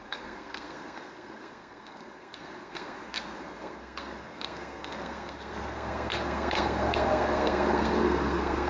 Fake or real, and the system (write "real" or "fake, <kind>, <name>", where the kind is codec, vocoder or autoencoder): fake, codec, SNAC